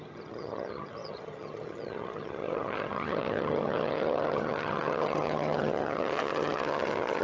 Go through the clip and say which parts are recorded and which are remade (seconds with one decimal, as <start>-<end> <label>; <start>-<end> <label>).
0.0-7.2 remade